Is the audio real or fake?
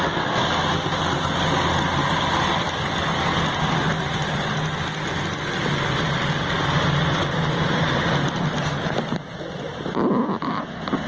real